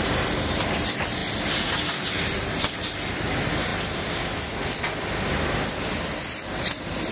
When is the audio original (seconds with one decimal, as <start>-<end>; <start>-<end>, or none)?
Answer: 0.0-3.7